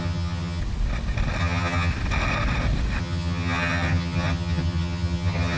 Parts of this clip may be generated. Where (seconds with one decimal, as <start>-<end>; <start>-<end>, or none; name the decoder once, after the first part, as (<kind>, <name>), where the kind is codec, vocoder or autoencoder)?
0.0-0.6 (vocoder, HiFi-GAN); 1.4-1.9; 3.0-5.6